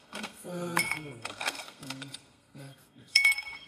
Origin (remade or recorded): remade